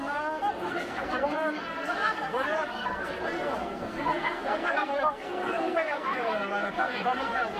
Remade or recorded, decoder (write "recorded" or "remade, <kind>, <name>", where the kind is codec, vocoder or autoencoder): remade, codec, SNAC